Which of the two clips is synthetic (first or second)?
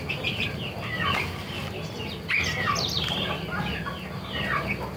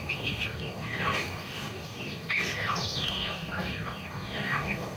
second